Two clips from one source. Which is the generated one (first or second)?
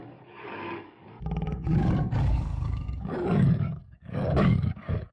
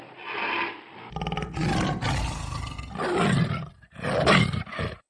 first